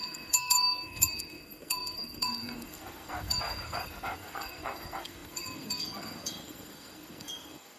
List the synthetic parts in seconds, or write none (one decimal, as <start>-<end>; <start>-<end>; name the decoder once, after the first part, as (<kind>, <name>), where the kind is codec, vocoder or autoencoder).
0.0-7.8 (codec, SNAC)